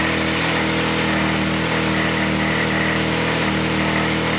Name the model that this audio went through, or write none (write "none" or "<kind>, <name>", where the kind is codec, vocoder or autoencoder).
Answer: none